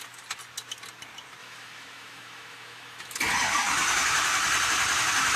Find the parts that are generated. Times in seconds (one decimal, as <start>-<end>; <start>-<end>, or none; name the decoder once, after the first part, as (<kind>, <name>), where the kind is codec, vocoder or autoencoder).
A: 1.4-3.2 (autoencoder, DAC-VAE)